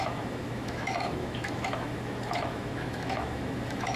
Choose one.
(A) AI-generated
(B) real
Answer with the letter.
A